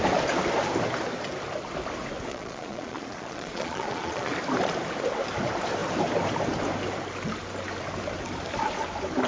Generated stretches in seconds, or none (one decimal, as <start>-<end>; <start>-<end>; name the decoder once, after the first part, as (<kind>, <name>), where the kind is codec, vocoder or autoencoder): 2.3-4.3 (vocoder, Vocos)